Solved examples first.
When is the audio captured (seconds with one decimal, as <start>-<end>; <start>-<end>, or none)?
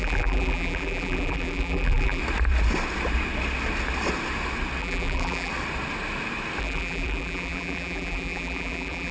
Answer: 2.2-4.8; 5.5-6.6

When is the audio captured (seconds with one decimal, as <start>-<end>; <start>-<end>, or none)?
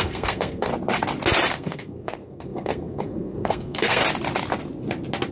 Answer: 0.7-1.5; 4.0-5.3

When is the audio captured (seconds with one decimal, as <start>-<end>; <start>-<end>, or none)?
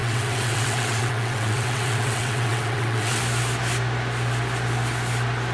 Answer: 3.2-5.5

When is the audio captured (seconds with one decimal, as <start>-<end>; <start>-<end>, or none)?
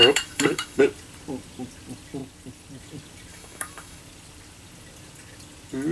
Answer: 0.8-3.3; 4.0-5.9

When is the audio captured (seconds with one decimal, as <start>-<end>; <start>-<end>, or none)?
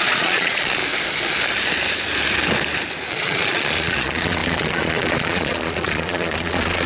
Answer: 0.8-3.1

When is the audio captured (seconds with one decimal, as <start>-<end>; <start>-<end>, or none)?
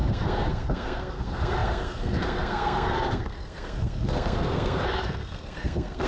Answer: none